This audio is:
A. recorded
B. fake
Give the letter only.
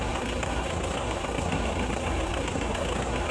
B